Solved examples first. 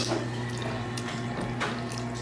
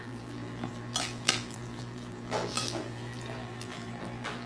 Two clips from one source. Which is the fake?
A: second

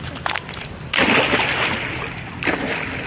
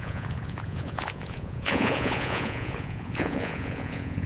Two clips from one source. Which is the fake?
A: second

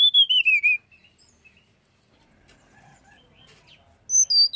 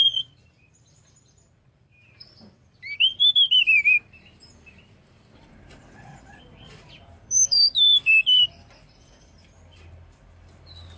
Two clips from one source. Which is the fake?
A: second